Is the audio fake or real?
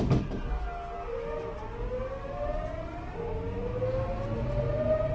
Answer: real